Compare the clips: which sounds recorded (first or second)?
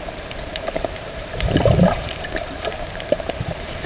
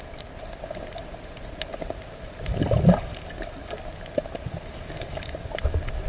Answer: second